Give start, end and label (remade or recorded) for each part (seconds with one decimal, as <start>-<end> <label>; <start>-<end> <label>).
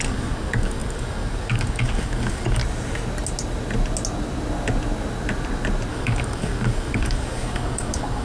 0.0-2.6 remade; 2.6-5.9 recorded; 5.9-8.2 remade